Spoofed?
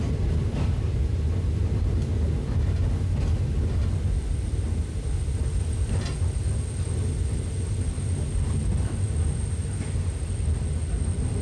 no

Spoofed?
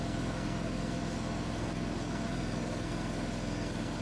yes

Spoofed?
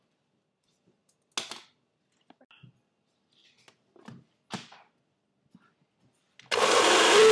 no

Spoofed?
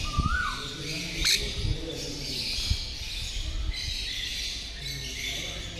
no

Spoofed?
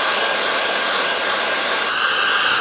no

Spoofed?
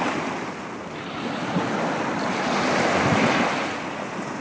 no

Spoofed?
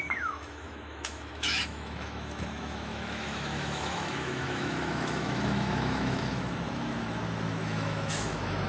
yes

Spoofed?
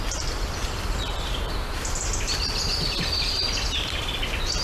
yes